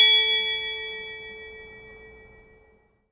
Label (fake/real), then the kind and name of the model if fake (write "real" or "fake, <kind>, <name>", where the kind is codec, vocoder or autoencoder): real